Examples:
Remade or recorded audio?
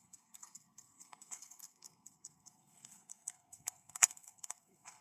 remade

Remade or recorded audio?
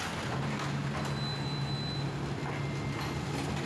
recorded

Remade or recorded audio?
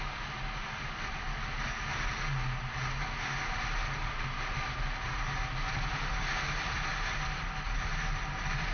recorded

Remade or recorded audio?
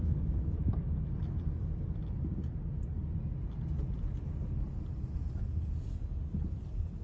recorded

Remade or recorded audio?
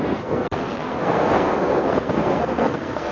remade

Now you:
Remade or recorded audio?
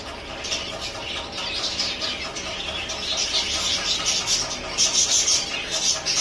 recorded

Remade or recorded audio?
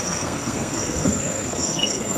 remade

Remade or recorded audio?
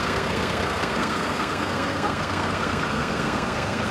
remade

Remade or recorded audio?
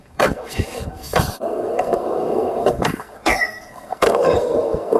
remade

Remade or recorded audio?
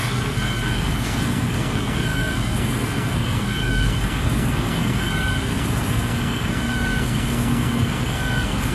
remade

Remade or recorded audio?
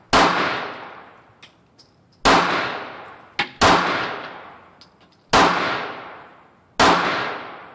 recorded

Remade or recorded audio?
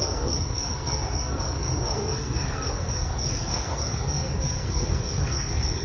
remade